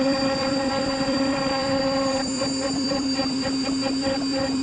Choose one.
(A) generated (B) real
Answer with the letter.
A